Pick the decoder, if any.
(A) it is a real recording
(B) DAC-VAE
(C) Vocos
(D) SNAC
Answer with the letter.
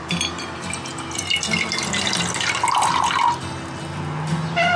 A